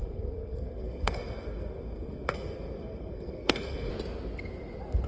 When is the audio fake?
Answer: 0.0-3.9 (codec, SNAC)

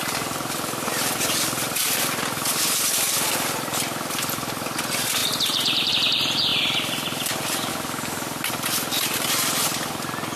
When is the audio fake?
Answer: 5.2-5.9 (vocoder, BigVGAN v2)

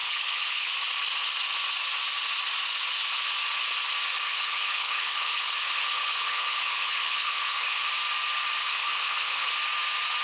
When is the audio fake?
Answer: 0.0-0.7 (codec, HILCodec); 4.1-7.9; 8.6-9.5